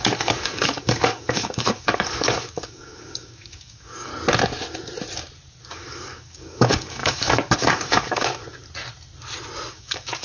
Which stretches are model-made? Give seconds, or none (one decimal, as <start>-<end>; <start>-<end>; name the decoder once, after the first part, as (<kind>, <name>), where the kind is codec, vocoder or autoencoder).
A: 0.0-4.1 (codec, DAC); 5.7-8.4; 9.7-10.2